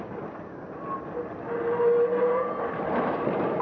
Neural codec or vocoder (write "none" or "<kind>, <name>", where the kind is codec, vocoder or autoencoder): none